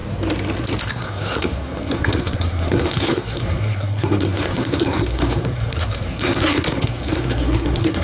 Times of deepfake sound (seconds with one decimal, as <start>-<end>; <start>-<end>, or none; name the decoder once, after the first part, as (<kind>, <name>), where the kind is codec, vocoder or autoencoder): 0.9-8.0 (codec, SNAC)